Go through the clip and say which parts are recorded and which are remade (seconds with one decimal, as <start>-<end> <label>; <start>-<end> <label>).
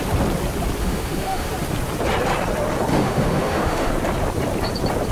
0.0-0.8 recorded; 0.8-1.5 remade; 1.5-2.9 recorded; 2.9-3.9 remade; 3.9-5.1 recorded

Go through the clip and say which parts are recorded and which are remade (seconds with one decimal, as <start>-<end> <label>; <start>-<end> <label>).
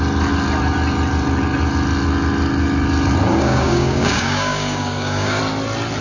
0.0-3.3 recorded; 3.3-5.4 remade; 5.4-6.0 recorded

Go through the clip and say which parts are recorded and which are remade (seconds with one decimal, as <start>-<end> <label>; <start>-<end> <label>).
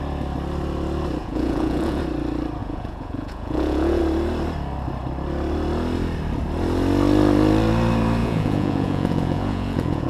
0.0-1.2 recorded; 1.2-2.0 remade; 2.0-2.6 recorded; 2.6-4.0 remade; 4.0-8.2 recorded; 8.2-10.1 remade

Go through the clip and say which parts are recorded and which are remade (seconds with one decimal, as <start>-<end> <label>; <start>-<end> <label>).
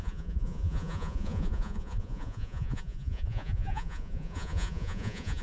0.0-5.4 remade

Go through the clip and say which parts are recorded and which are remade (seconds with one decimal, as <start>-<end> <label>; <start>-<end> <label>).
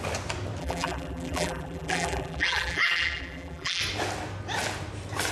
0.0-0.6 recorded; 0.6-3.8 remade; 3.8-5.3 recorded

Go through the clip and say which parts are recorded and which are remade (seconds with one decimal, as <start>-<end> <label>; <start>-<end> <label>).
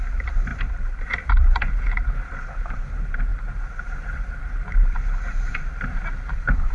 0.0-6.7 remade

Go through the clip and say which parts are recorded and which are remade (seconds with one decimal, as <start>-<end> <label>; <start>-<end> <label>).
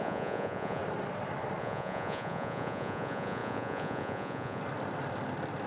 0.0-0.8 remade; 0.8-1.6 recorded; 1.6-4.6 remade; 4.6-5.7 recorded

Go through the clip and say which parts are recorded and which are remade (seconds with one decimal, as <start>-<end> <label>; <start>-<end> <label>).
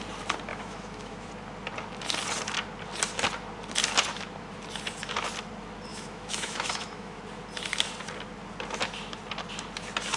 0.0-0.5 recorded; 0.5-1.3 remade; 1.3-5.9 recorded; 5.9-7.2 remade; 7.2-10.2 recorded